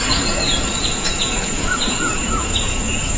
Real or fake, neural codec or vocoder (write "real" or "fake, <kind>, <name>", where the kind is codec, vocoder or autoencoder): fake, vocoder, Vocos